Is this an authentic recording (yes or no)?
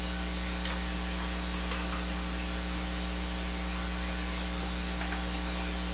yes